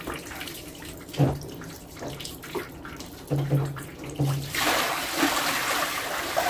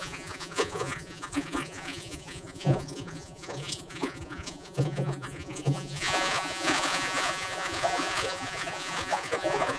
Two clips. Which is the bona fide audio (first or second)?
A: first